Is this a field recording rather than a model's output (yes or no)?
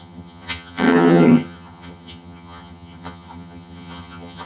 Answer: no